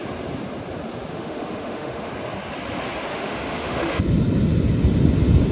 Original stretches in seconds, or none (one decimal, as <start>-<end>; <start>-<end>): 0.0-1.1; 2.1-3.1; 4.0-5.5